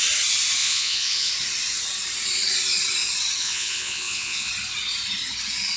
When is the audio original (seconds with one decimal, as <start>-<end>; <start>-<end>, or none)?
0.0-0.6; 1.3-3.4; 4.5-5.8